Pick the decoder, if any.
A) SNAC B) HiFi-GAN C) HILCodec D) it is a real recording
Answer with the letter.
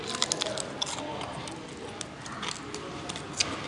D